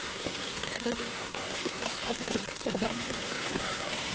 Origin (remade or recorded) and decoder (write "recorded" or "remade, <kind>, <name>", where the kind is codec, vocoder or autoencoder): remade, codec, SNAC